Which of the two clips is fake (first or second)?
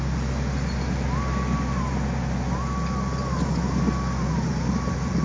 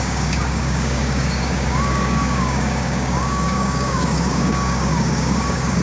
second